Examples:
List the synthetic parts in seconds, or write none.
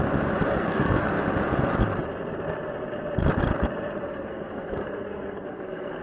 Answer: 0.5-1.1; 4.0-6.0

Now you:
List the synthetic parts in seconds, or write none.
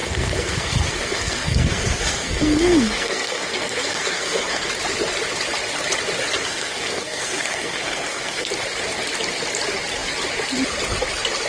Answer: 0.0-4.7; 6.4-8.5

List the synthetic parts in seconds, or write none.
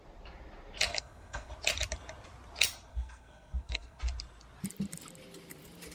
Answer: 0.9-1.5; 2.9-4.0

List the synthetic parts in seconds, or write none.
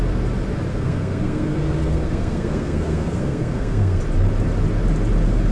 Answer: 0.7-4.0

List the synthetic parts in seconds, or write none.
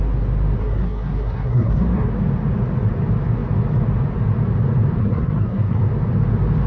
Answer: 0.6-2.1; 5.0-5.8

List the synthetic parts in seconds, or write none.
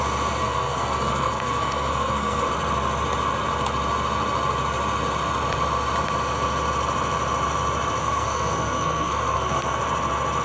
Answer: 0.4-2.5; 8.0-9.8